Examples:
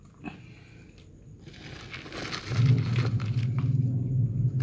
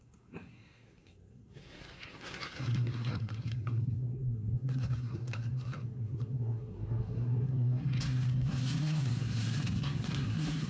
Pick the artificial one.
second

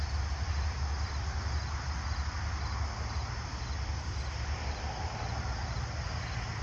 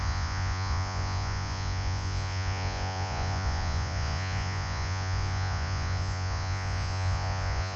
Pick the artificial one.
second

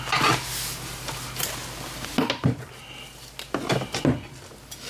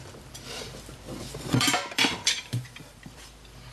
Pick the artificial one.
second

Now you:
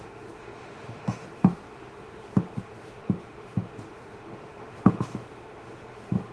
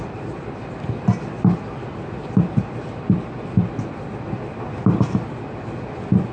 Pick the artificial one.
first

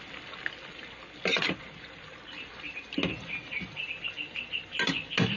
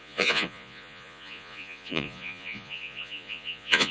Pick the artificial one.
second